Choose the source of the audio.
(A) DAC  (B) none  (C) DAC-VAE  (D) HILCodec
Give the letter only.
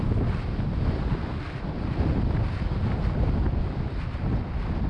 B